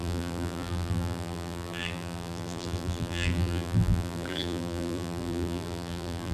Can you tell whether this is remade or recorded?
remade